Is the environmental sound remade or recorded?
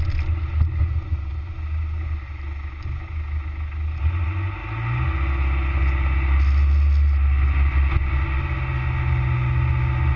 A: recorded